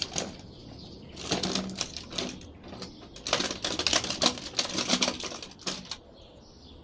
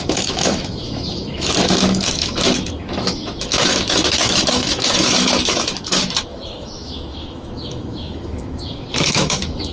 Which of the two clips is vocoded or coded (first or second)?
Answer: second